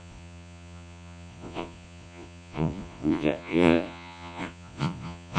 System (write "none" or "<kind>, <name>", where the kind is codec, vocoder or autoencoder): vocoder, Vocos